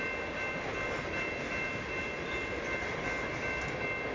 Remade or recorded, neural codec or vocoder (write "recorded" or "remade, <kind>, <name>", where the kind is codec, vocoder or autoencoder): recorded